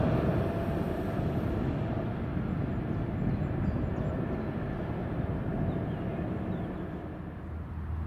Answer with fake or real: real